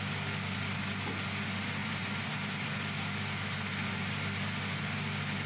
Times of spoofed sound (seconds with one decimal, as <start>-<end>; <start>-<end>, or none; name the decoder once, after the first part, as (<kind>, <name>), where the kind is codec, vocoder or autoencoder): none